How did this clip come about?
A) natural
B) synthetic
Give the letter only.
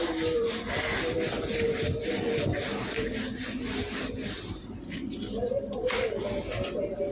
A